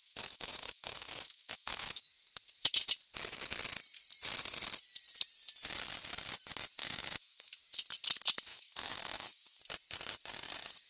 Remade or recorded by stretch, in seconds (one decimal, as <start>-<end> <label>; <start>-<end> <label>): 0.0-2.0 remade; 2.0-6.8 recorded; 6.8-7.6 remade; 7.6-8.5 recorded; 8.5-9.6 remade; 9.6-10.9 recorded